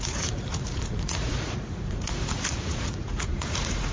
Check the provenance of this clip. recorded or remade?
remade